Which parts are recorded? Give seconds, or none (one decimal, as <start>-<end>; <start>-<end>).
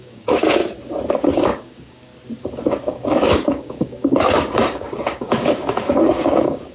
0.6-1.1; 2.1-2.7